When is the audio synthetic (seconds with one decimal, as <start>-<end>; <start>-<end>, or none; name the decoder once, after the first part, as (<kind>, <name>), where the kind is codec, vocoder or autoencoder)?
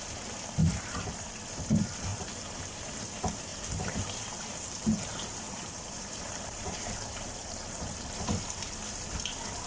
0.6-1.3 (vocoder, BigVGAN v2); 2.1-2.6; 3.5-8.0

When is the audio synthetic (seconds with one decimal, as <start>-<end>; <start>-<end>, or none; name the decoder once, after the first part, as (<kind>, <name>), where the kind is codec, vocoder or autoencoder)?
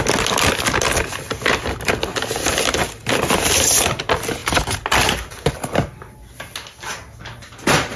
none